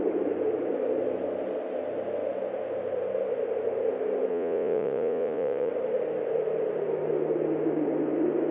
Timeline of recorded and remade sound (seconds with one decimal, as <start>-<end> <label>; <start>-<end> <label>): 0.0-4.3 recorded; 4.3-5.7 remade; 5.7-8.5 recorded